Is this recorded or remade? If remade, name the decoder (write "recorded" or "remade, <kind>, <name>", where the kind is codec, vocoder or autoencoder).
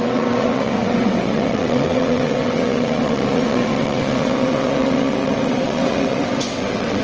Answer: remade, vocoder, WaveNeXt